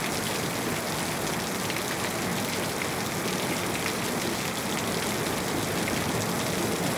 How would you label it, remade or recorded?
recorded